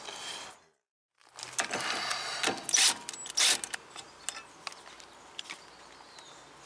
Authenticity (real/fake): real